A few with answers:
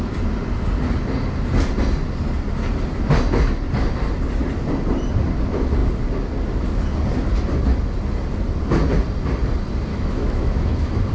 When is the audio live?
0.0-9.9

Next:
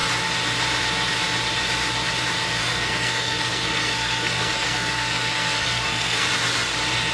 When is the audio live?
0.0-2.6; 6.3-7.1

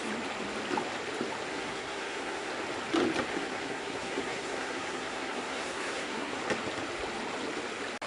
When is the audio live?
0.0-1.5; 2.5-3.3; 6.4-8.1

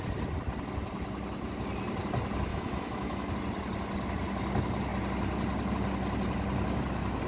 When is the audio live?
0.0-2.5; 3.3-7.3

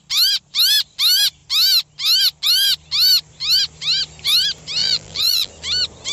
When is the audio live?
0.0-4.8; 5.5-6.1

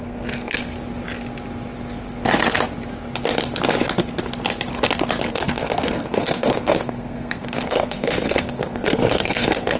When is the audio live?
0.7-5.3

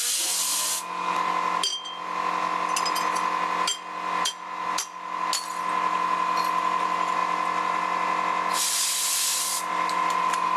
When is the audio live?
0.0-9.3